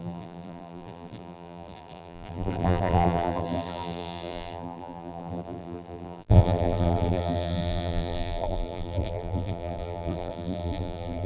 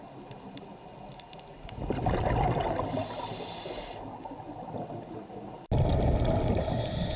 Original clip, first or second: second